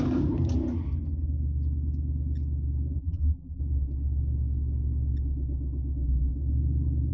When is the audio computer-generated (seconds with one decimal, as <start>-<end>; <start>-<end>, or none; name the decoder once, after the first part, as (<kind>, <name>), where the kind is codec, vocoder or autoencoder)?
3.0-3.6 (vocoder, BigVGAN v2)